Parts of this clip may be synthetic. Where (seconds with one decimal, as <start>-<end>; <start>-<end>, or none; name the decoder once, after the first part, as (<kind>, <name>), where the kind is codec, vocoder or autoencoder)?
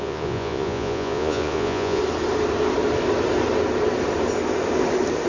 0.0-2.0 (vocoder, Vocos)